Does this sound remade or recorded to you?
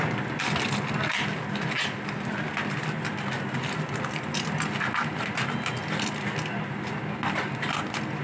recorded